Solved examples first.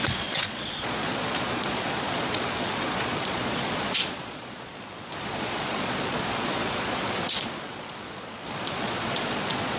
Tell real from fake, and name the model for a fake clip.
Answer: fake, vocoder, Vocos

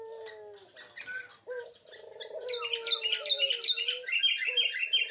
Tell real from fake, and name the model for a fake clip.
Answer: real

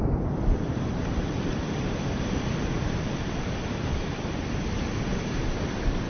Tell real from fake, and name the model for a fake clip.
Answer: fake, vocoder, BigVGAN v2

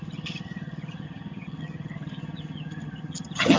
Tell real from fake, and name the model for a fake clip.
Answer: fake, vocoder, HiFi-GAN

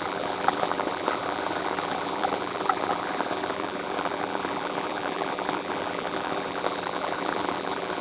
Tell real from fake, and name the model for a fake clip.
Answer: fake, vocoder, BigVGAN v2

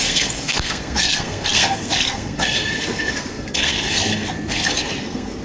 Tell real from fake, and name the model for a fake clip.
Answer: fake, codec, SNAC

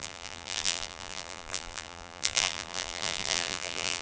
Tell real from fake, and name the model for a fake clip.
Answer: fake, vocoder, BigVGAN v2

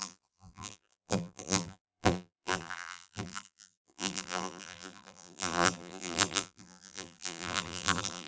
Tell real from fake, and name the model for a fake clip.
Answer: fake, vocoder, BigVGAN v2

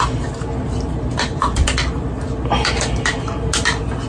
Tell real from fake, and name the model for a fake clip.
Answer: real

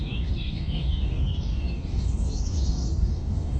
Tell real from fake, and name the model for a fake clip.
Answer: fake, codec, DAC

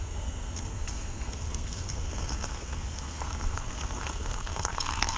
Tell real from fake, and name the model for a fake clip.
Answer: fake, codec, SNAC